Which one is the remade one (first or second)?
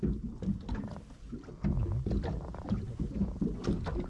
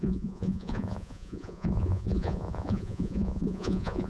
second